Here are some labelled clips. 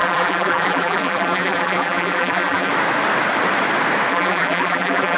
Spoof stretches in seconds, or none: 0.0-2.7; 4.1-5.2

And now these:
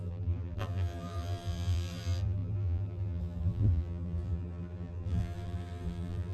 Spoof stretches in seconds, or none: 0.0-6.3

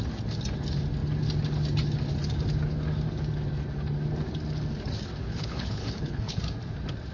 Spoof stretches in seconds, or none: 5.2-6.4

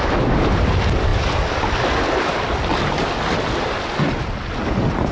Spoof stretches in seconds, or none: none

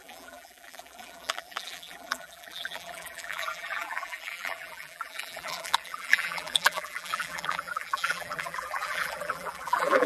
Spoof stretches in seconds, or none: 0.0-10.1

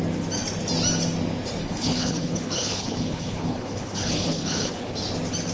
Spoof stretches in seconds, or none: 1.6-4.9